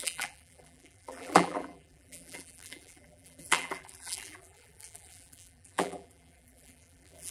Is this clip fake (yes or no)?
yes